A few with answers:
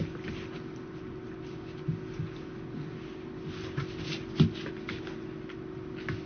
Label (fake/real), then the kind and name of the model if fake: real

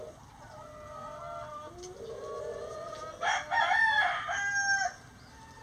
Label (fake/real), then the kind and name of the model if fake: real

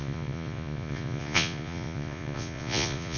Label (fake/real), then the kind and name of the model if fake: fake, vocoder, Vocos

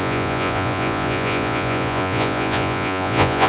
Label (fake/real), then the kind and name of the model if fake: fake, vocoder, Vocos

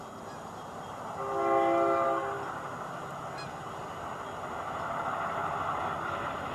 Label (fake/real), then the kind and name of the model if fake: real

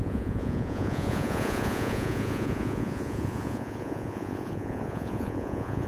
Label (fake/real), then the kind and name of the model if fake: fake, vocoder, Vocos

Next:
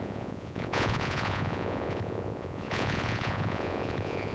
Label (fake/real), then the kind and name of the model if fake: fake, vocoder, Vocos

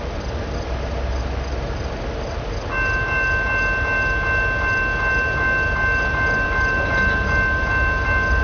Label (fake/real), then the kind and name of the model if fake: real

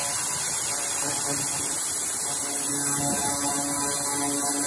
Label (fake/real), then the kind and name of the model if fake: real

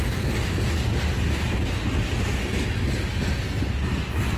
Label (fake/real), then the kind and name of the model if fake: real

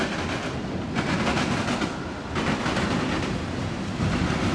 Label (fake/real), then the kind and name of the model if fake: real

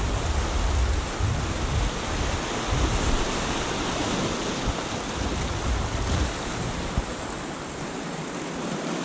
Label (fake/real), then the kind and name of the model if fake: real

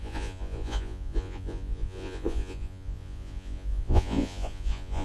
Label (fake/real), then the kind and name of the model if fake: fake, vocoder, Vocos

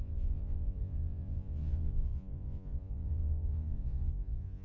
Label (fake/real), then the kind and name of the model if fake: fake, vocoder, Vocos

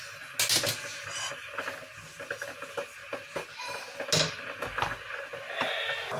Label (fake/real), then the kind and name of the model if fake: real